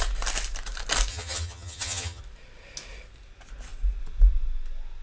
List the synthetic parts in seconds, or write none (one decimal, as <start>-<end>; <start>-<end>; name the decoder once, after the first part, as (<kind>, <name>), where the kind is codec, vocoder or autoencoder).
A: 1.1-2.2 (vocoder, HiFi-GAN)